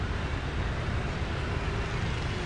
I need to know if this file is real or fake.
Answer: real